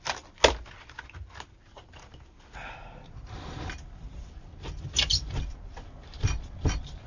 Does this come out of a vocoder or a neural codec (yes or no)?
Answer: no